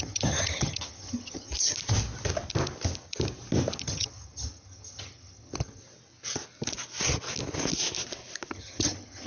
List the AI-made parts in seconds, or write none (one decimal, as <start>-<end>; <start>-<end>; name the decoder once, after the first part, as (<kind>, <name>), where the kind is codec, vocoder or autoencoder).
0.0-1.5 (vocoder, HiFi-GAN); 3.8-5.8; 8.5-9.3